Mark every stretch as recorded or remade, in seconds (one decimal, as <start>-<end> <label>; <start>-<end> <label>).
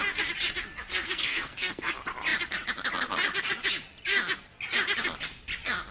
0.0-0.9 recorded; 0.9-1.9 remade; 1.9-5.9 recorded